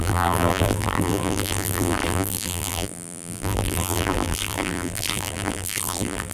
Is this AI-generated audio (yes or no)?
yes